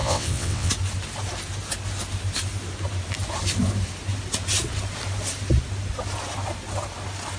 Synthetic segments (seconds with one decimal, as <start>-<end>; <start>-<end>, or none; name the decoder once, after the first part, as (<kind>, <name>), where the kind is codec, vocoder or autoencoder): 0.0-0.7 (vocoder, WaveNeXt)